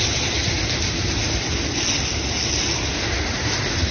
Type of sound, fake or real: real